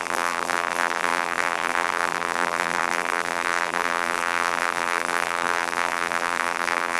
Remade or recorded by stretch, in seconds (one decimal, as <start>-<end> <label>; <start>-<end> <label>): 0.0-7.0 remade